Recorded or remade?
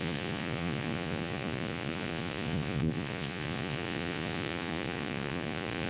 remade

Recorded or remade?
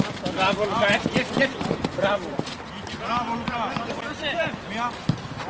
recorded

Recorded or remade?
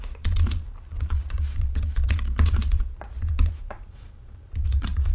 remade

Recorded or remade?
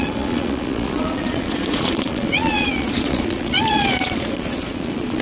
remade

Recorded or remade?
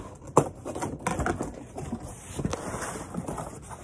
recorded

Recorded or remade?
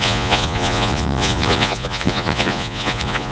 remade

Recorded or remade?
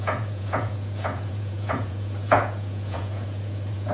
remade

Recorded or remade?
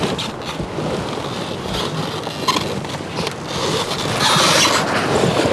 recorded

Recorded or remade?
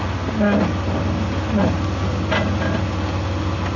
recorded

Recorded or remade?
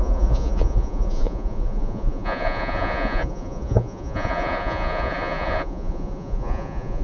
remade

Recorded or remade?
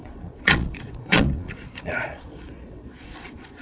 remade